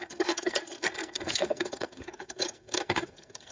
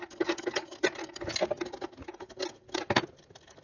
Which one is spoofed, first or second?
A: first